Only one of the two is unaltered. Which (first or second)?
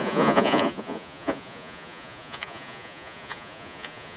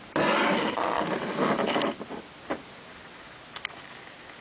second